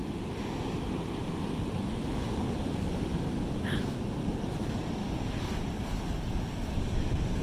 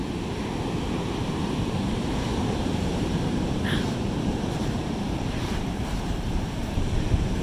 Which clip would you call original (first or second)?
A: first